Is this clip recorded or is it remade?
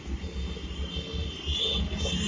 recorded